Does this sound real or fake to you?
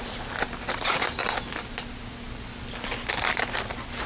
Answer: real